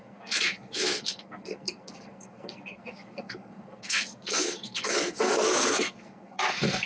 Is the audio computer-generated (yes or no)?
yes